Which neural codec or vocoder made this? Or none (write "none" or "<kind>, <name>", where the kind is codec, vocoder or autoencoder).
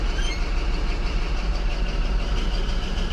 vocoder, BigVGAN v2